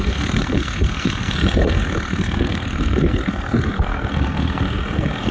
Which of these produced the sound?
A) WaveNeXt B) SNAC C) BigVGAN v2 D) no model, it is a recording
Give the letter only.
B